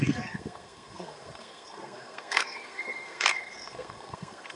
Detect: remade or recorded remade